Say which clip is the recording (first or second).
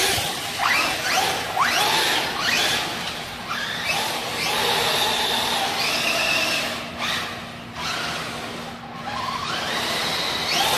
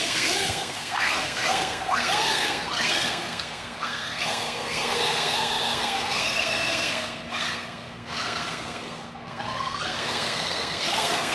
first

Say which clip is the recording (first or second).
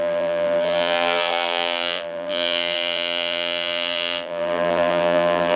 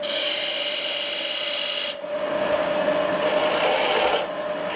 second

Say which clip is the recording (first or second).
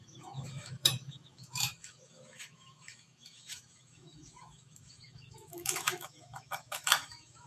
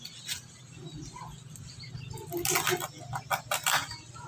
second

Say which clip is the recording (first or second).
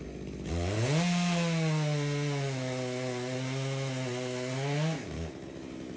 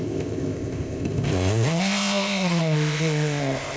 first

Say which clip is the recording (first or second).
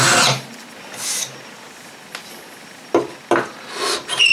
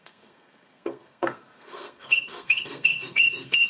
first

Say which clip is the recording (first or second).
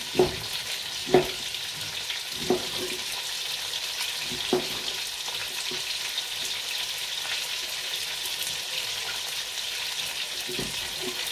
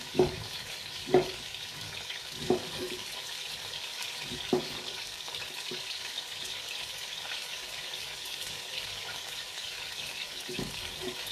first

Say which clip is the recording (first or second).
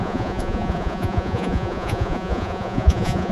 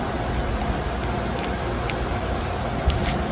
second